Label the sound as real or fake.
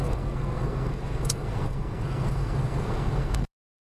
fake